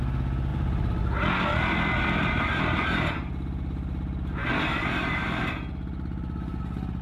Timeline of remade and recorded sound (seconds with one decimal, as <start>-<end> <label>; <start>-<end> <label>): 0.0-0.5 recorded; 0.5-1.0 remade; 1.0-2.2 recorded; 2.2-3.3 remade; 3.3-4.4 recorded; 4.4-6.6 remade; 6.6-7.0 recorded